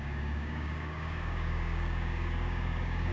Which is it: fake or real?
fake